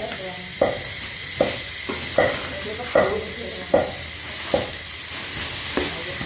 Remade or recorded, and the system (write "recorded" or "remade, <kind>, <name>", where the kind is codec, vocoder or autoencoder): recorded